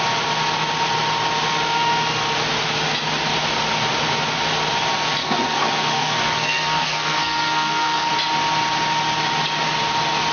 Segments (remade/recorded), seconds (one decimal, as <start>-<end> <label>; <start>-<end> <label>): 0.0-5.2 recorded; 5.2-8.1 remade; 8.1-10.3 recorded